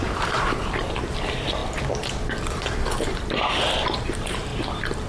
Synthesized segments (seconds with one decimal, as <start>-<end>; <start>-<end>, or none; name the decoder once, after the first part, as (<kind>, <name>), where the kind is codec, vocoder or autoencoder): 0.0-1.6 (vocoder, BigVGAN v2); 4.1-4.5